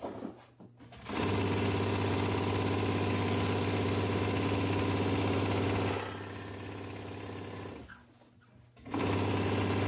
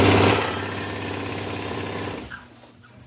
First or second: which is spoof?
second